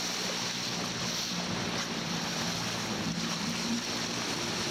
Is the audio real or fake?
real